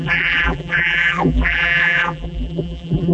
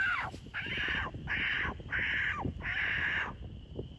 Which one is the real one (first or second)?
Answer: second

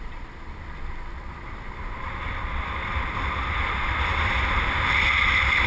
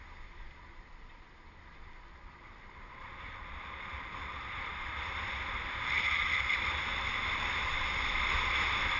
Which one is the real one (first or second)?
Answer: first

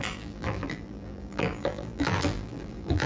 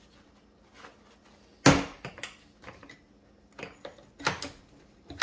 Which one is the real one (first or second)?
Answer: second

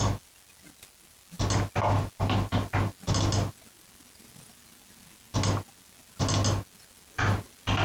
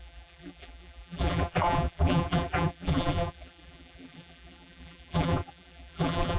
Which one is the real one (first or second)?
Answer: first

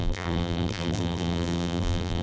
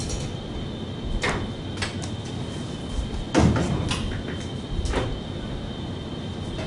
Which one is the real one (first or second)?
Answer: second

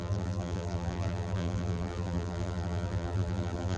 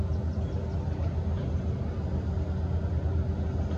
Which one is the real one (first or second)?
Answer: second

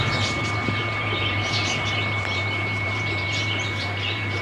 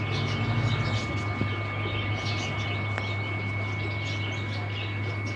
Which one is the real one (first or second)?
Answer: second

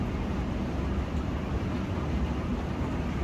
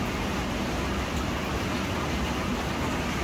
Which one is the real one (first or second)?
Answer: second